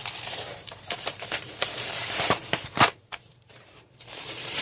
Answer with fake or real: fake